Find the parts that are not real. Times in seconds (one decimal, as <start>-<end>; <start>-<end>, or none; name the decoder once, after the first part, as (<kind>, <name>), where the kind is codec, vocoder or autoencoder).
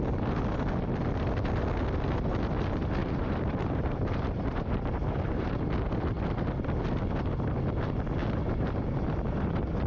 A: 3.0-5.8 (vocoder, BigVGAN v2); 8.2-9.0